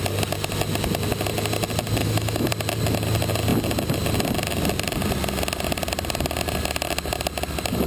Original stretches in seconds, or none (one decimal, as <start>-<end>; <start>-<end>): 0.0-2.0; 2.5-7.9